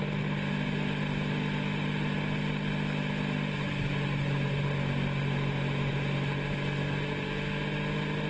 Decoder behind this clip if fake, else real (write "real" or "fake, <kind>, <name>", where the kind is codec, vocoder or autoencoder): real